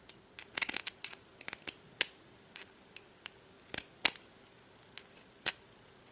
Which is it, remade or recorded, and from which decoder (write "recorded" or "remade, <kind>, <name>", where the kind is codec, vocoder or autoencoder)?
recorded